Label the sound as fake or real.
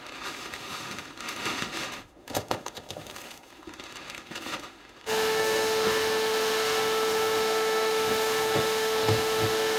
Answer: fake